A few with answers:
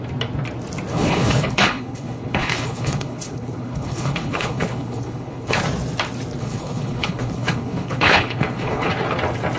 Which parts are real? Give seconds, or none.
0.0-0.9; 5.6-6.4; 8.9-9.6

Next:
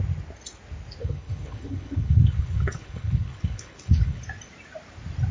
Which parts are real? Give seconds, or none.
0.0-1.0; 4.2-5.3

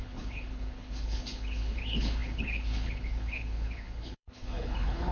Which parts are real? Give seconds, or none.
none

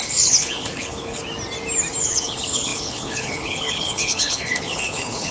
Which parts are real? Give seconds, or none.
1.2-2.0

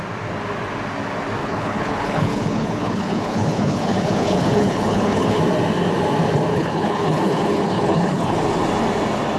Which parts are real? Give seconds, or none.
0.0-1.4; 5.4-6.5; 8.4-9.4

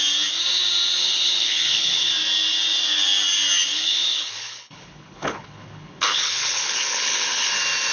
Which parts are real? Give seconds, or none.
0.0-1.0; 2.1-3.7; 7.5-7.9